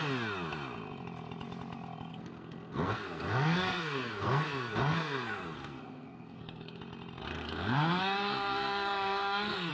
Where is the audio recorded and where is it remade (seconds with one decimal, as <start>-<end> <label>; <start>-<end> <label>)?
0.0-2.1 recorded; 2.1-6.8 remade; 6.8-7.3 recorded; 7.3-9.7 remade